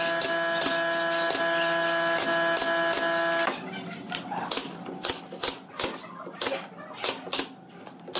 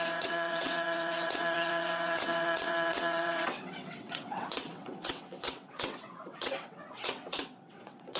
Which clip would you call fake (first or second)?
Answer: second